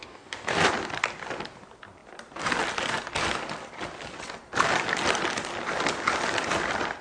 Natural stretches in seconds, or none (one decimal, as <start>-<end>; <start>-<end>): 0.7-7.0